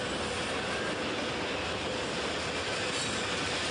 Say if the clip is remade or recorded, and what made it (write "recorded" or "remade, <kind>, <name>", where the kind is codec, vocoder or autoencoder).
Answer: recorded